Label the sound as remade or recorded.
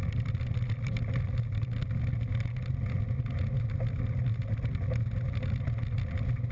recorded